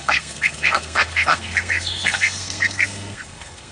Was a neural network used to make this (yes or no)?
yes